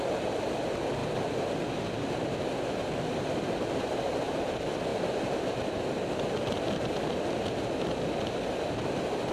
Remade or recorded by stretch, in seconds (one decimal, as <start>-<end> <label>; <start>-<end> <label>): 0.0-9.3 recorded